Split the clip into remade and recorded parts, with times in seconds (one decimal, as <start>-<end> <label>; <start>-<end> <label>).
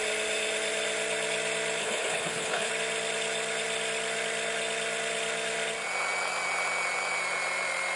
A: 0.0-1.8 recorded; 1.8-2.7 remade; 2.7-8.0 recorded